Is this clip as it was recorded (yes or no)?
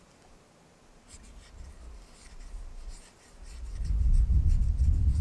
yes